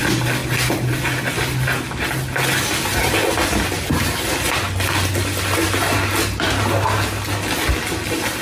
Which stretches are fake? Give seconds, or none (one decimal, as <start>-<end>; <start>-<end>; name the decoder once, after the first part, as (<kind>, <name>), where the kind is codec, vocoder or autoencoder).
none